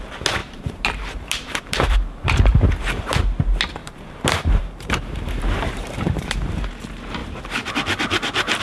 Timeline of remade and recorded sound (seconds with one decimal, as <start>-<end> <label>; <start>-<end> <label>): 0.0-0.4 recorded; 0.4-3.2 remade; 3.2-3.8 recorded; 3.8-6.7 remade; 6.7-8.6 recorded